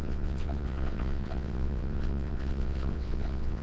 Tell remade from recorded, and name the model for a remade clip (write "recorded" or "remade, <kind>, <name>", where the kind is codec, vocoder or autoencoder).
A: remade, vocoder, WaveNeXt